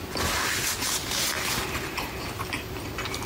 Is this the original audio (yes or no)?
yes